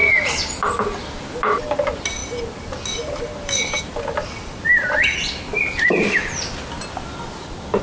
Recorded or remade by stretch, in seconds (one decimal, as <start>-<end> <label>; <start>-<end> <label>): 0.0-7.8 recorded